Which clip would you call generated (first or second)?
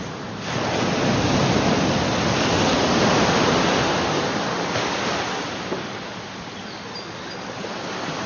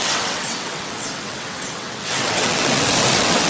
second